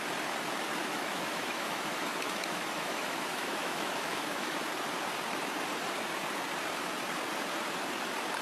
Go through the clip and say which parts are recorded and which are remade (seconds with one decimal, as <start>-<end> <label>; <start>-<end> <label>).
0.0-0.8 recorded; 0.8-4.6 remade; 4.6-8.4 recorded